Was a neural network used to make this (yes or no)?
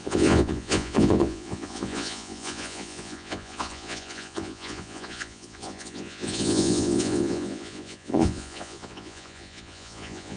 yes